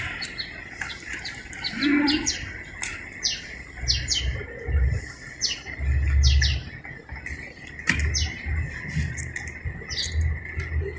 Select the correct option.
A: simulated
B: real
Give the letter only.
B